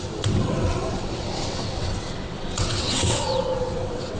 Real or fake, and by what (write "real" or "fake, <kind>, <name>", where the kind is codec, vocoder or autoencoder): fake, vocoder, WaveNeXt